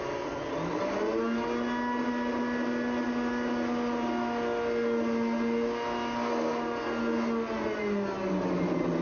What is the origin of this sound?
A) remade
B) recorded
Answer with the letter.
B